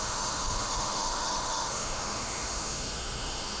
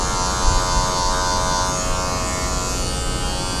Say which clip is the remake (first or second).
first